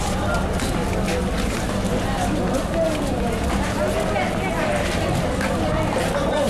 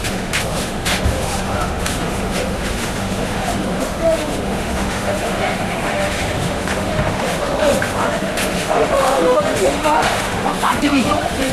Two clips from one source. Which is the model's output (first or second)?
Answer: second